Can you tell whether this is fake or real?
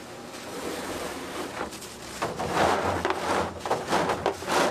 real